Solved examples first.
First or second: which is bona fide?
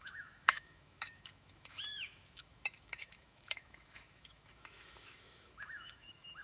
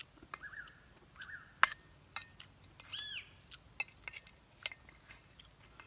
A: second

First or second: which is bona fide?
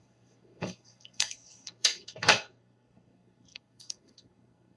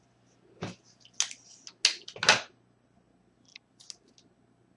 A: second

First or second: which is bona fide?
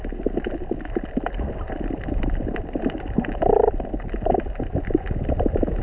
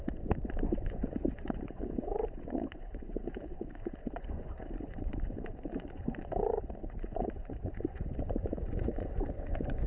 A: first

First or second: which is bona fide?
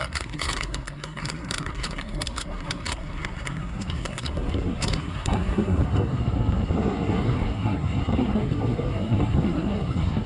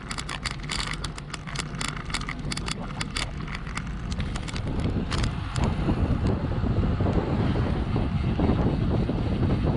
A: second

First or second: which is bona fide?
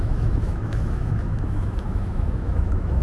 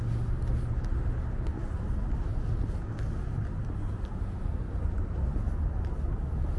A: second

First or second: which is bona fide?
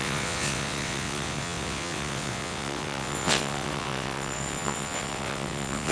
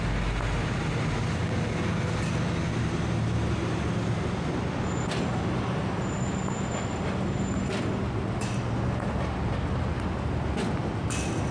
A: second